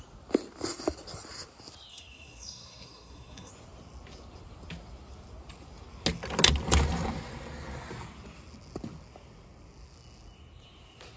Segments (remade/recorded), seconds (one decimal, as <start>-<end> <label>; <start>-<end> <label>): 0.0-1.9 recorded; 1.9-3.5 remade; 3.5-11.2 recorded